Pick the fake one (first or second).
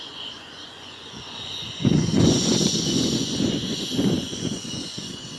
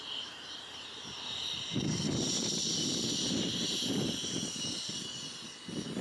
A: first